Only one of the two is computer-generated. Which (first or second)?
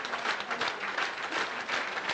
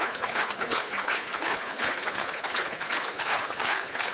second